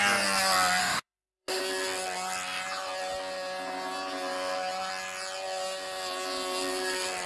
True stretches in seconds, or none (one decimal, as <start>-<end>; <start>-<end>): 0.0-0.8; 1.6-7.3